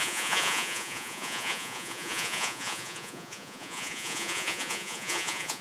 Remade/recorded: remade